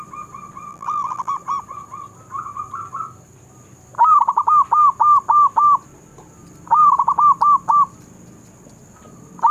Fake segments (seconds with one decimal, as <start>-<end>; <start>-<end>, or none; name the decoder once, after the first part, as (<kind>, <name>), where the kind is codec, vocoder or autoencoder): 0.7-1.3 (vocoder, BigVGAN v2)